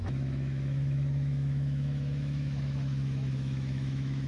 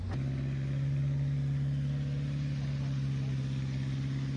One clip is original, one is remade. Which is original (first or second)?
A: second